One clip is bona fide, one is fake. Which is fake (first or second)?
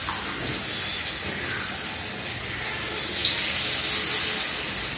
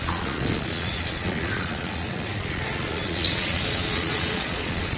second